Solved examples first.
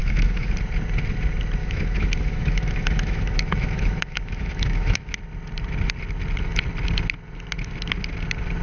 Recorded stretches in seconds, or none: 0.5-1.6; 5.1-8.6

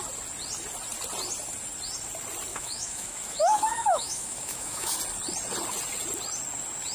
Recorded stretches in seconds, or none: 0.0-2.5; 5.0-6.9